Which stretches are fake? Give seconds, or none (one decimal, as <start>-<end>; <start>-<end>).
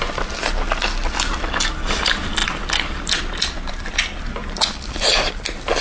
none